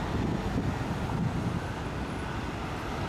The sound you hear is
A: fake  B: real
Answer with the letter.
B